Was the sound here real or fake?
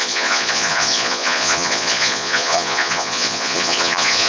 fake